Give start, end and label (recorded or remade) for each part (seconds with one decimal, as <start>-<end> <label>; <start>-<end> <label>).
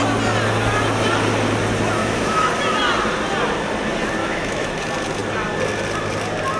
0.0-2.0 recorded; 2.0-2.5 remade; 2.5-4.2 recorded; 4.2-4.8 remade; 4.8-6.6 recorded